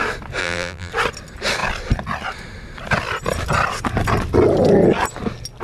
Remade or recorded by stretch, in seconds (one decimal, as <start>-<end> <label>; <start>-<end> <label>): 0.0-0.4 recorded; 0.4-0.9 remade; 0.9-5.6 recorded

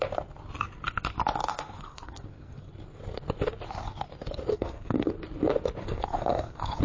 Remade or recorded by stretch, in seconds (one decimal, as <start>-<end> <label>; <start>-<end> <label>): 0.0-1.4 recorded; 1.4-2.7 remade; 2.7-4.5 recorded; 4.5-5.1 remade; 5.1-5.8 recorded; 5.8-6.8 remade

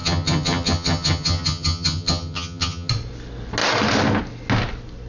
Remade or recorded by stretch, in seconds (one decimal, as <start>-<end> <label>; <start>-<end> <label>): 0.0-2.9 remade; 2.9-5.1 recorded

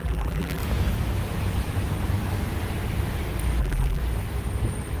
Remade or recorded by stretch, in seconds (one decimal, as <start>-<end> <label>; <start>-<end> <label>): 0.0-0.6 remade; 0.6-3.6 recorded; 3.6-4.0 remade; 4.0-5.0 recorded

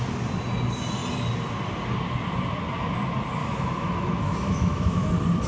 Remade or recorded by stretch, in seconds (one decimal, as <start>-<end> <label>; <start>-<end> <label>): 0.0-3.4 recorded; 3.4-5.1 remade; 5.1-5.5 recorded